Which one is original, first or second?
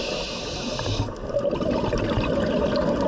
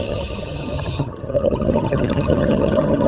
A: first